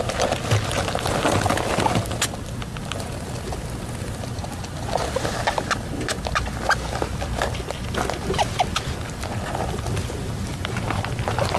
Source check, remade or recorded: recorded